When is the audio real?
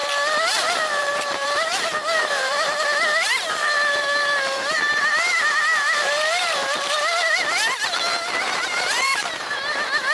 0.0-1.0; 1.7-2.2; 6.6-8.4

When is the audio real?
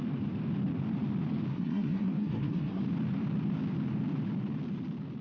0.0-1.5; 2.8-5.2